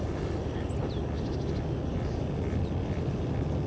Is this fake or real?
real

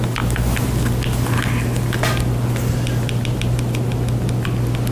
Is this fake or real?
real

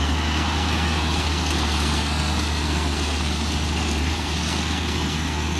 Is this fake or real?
fake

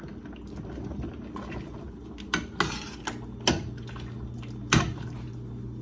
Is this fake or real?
real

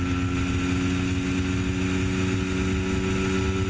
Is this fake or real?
real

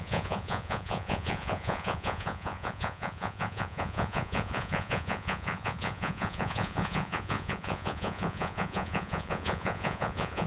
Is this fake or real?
fake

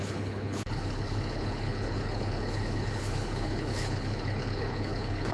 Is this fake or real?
fake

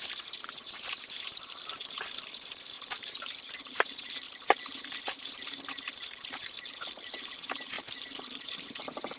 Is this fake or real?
fake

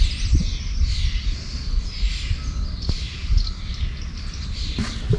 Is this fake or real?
real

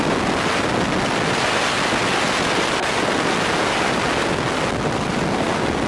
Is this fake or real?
real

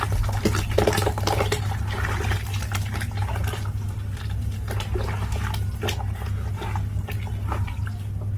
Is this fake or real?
real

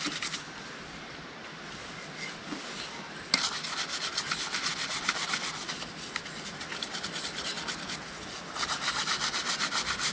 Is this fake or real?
real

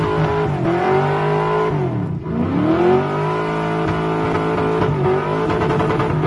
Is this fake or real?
real